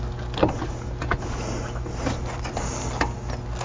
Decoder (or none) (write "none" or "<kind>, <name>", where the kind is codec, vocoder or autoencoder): none